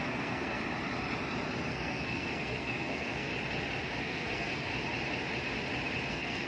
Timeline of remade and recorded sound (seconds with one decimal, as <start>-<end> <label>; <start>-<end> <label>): 0.0-0.6 remade; 0.6-1.7 recorded; 1.7-3.3 remade; 3.3-4.0 recorded; 4.0-4.7 remade; 4.7-6.1 recorded; 6.1-6.5 remade